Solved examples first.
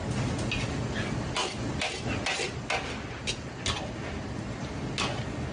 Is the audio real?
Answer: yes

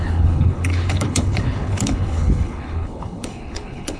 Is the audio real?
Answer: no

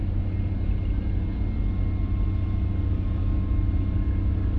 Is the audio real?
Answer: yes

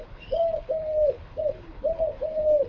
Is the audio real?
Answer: no